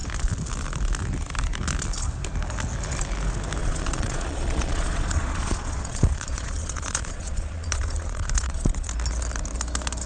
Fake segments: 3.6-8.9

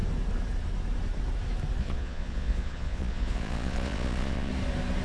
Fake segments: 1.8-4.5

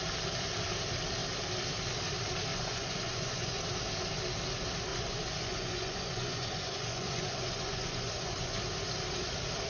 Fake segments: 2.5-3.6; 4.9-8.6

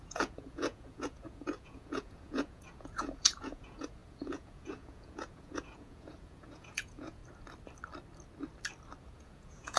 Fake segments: 0.0-7.2; 9.0-9.8

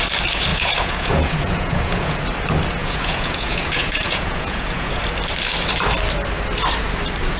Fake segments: 0.5-2.2; 2.8-5.0

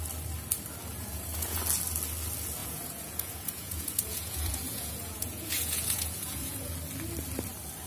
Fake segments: 0.9-1.6; 2.6-6.7

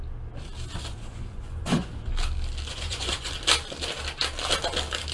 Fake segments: 0.9-1.9; 2.7-3.3